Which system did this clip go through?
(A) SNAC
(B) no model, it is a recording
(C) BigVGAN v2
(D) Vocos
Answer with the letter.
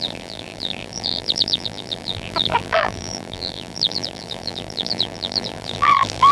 C